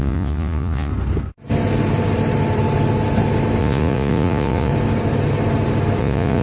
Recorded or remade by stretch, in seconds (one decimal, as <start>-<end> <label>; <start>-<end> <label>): 0.0-0.9 remade; 0.9-3.6 recorded; 3.6-4.7 remade; 4.7-6.0 recorded; 6.0-6.4 remade